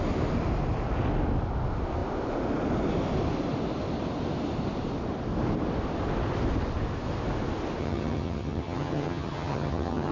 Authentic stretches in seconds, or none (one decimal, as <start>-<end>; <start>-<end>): 0.0-7.8